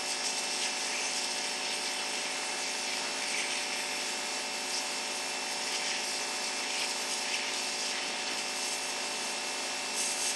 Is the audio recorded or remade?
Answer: recorded